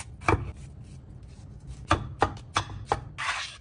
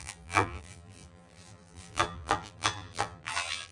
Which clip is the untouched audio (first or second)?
first